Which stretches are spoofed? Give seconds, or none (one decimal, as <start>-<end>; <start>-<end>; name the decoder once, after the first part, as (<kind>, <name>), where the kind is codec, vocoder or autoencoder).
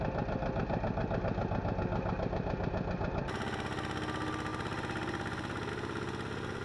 none